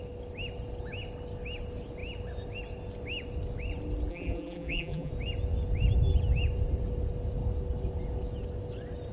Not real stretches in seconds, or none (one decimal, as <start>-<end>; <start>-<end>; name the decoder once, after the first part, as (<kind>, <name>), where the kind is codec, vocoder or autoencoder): 4.1-5.1 (vocoder, BigVGAN v2)